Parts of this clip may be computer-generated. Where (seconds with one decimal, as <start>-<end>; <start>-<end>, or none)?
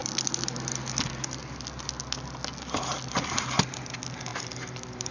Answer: none